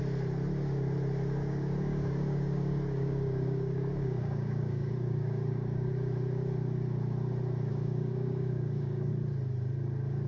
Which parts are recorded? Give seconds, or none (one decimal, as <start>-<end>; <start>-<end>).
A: 0.0-1.4; 5.9-7.7; 9.1-10.3